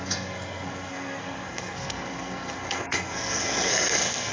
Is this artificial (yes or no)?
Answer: yes